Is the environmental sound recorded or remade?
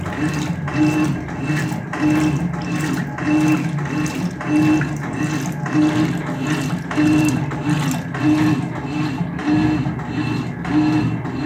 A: recorded